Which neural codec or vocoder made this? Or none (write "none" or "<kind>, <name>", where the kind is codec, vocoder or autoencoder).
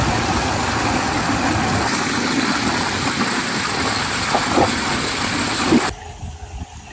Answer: none